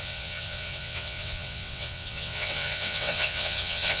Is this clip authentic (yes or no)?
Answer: no